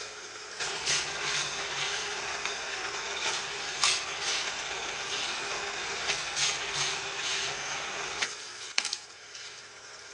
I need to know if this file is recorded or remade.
remade